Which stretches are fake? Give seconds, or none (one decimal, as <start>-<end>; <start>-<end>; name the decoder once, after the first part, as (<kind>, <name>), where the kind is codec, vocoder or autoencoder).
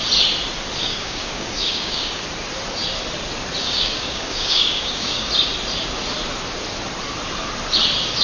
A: 0.8-2.2 (codec, DAC); 3.6-5.3